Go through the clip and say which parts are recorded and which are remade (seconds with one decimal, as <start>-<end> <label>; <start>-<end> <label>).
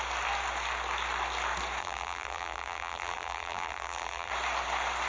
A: 0.0-1.8 recorded; 1.8-4.3 remade; 4.3-5.1 recorded